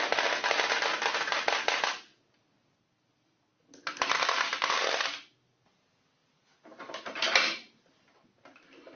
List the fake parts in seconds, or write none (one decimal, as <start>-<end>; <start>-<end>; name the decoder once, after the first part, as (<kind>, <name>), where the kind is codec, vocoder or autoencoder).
2.1-4.7 (vocoder, BigVGAN v2); 6.2-8.0

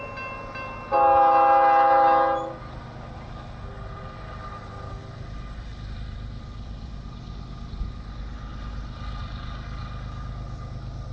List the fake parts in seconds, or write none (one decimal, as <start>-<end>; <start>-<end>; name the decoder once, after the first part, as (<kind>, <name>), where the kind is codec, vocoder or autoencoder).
5.0-7.2 (vocoder, BigVGAN v2); 9.2-9.8

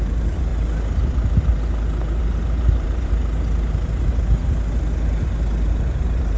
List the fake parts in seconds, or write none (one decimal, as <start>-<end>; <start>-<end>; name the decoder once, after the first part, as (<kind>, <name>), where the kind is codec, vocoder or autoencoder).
0.0-0.5 (vocoder, BigVGAN v2); 2.2-3.2; 5.7-6.4

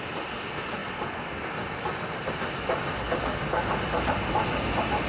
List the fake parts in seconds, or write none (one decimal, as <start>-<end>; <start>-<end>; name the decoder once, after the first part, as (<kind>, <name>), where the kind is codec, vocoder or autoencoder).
none

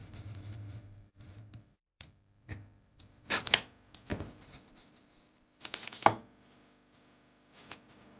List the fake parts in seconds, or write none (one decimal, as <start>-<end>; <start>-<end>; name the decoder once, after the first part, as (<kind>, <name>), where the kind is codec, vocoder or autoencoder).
0.0-3.5 (vocoder, BigVGAN v2); 4.1-5.6

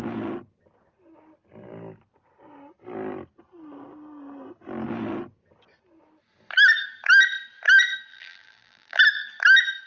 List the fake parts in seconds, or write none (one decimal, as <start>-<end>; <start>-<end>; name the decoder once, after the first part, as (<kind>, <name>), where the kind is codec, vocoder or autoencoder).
8.1-9.0 (vocoder, BigVGAN v2)